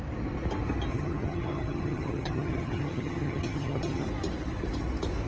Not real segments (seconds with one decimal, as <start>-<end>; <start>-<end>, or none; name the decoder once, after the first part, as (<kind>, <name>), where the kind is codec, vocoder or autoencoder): 0.9-4.1 (vocoder, HiFi-GAN)